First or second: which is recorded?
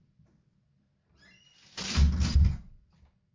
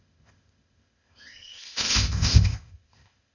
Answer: first